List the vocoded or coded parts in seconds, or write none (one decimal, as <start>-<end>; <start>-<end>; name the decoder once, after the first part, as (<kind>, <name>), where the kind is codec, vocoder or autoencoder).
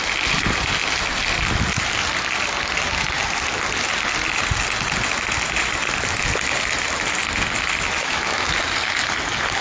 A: 8.0-8.5 (autoencoder, DAC-VAE)